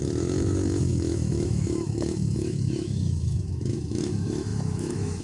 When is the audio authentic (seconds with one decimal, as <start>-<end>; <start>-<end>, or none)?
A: none